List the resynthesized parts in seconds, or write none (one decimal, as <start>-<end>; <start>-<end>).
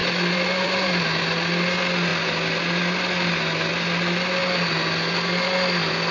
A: 0.0-1.2